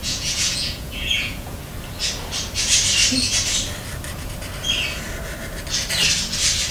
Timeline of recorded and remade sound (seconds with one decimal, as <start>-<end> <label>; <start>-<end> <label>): 0.0-1.6 remade; 1.6-6.7 recorded